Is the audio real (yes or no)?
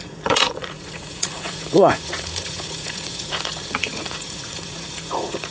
no